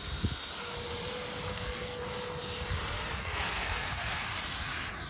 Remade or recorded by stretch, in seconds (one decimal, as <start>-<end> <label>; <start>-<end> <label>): 0.0-1.5 recorded; 1.5-2.0 remade; 2.0-3.2 recorded; 3.2-4.2 remade; 4.2-5.1 recorded